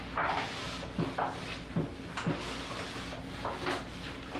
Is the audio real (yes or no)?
yes